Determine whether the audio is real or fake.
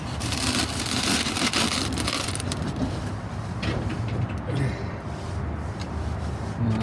fake